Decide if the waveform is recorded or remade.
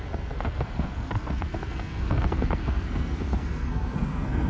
remade